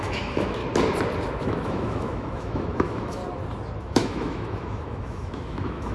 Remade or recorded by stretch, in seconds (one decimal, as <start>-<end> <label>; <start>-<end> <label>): 0.0-0.6 remade; 0.6-1.4 recorded; 1.4-3.2 remade; 3.2-3.8 recorded; 3.8-5.9 remade